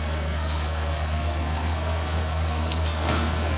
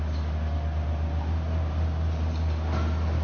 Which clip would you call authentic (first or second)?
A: second